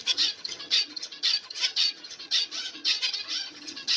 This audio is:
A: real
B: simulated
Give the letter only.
B